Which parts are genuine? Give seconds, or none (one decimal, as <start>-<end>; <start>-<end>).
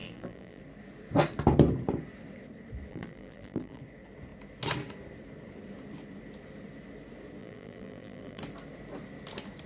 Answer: 0.6-2.9; 3.8-7.4; 8.4-9.7